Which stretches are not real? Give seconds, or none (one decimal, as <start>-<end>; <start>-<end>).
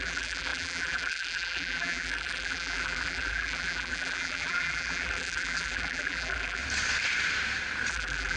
0.0-6.6; 7.9-8.4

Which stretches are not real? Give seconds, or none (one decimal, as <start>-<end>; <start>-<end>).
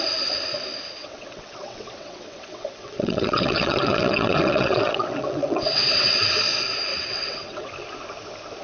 1.0-6.2; 6.9-7.7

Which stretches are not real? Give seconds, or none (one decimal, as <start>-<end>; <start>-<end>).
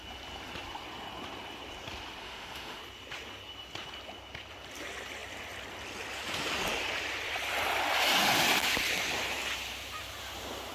2.2-2.8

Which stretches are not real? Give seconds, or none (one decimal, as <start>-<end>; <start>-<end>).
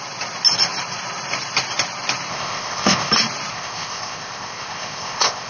2.3-3.1; 3.5-5.5